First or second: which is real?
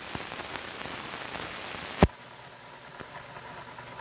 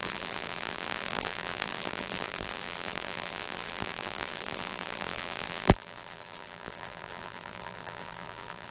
first